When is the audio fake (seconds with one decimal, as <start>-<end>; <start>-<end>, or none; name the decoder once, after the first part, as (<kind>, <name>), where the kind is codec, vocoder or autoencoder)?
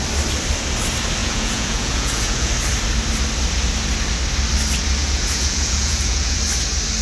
1.2-2.5 (vocoder, Vocos); 5.0-6.4